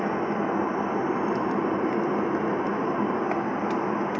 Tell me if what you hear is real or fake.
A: real